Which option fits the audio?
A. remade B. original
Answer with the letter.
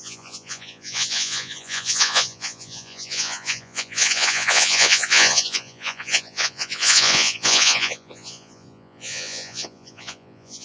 A